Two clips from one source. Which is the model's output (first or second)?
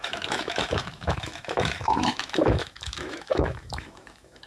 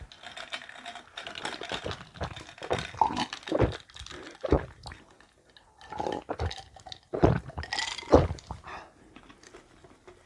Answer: first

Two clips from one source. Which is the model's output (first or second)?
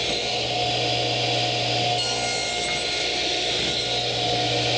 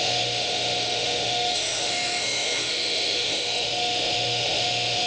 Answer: second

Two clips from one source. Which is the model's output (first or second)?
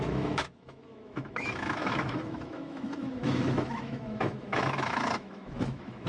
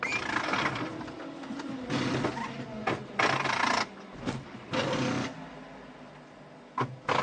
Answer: first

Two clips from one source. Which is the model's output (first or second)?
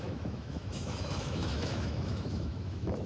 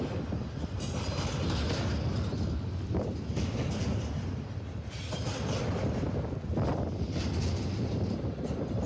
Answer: first